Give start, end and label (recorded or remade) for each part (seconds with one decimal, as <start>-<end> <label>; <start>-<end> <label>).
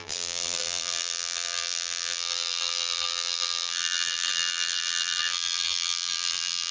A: 0.0-6.7 remade